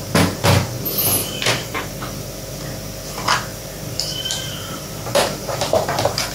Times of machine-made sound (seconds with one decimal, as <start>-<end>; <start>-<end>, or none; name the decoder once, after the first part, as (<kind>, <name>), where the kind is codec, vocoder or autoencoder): 1.2-1.9 (vocoder, BigVGAN v2); 3.5-6.3